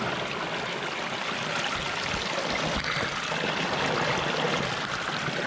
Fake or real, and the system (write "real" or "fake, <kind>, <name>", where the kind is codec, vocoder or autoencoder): real